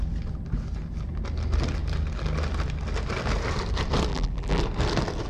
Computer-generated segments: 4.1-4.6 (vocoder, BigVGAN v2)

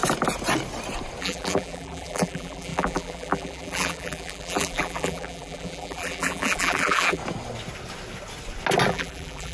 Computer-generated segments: 1.2-7.2 (vocoder, BigVGAN v2); 8.9-9.5

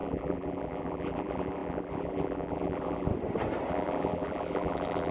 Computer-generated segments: 0.0-3.1 (vocoder, BigVGAN v2); 3.7-5.1